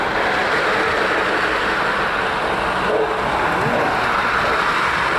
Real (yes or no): yes